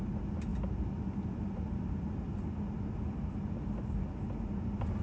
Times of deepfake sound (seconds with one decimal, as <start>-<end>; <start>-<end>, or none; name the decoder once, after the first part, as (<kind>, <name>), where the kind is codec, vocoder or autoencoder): none